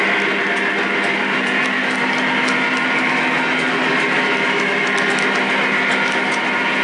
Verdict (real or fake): real